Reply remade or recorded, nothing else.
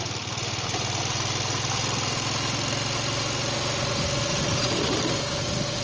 recorded